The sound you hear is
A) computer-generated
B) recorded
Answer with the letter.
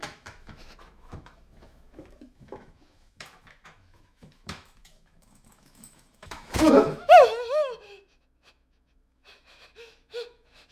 A